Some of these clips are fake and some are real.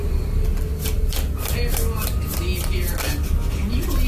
real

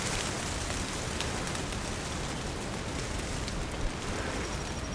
real